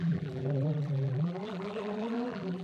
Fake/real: fake